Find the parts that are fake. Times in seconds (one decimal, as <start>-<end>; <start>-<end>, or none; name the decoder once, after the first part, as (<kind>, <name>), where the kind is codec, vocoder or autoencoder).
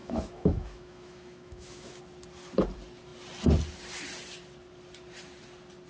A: 0.0-2.0 (autoencoder, DAC-VAE)